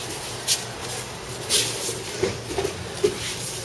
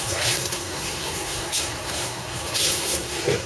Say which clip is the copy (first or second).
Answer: second